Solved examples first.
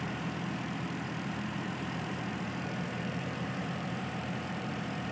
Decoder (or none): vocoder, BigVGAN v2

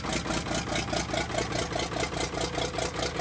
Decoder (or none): none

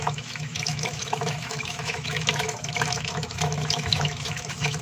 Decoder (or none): autoencoder, DAC-VAE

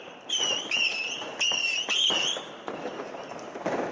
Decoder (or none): none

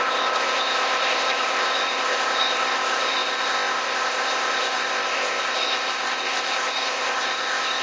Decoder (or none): codec, ZipCodec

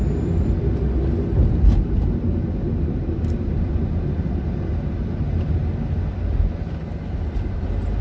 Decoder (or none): none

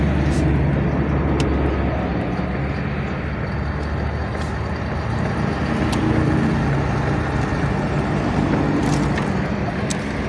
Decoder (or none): none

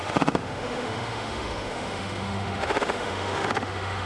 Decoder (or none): autoencoder, DAC-VAE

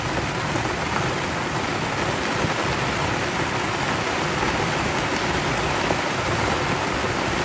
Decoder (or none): none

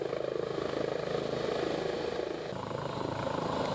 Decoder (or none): none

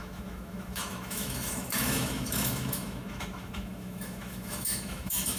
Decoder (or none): autoencoder, DAC-VAE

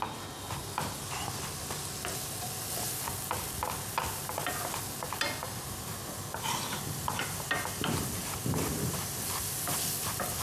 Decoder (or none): none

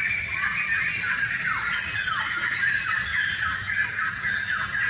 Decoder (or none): none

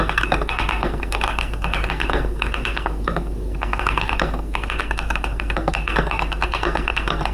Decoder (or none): codec, SNAC